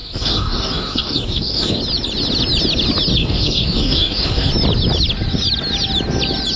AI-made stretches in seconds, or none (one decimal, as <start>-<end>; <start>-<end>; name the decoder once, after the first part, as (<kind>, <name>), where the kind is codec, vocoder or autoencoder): 0.0-1.8 (codec, DAC); 3.2-4.5